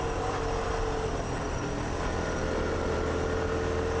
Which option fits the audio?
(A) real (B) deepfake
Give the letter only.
A